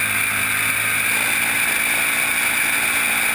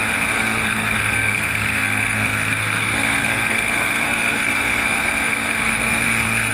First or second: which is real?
first